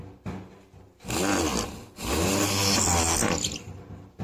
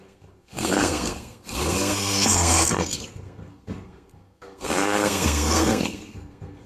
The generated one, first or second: second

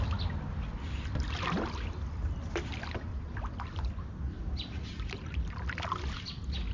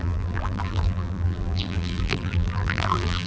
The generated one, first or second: second